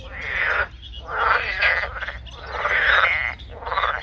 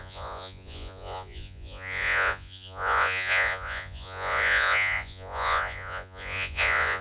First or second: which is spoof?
second